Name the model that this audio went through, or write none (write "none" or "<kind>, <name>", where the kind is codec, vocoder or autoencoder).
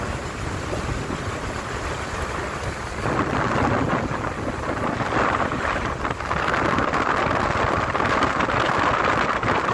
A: none